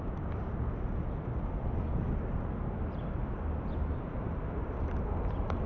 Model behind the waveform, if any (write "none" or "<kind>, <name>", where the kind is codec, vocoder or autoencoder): none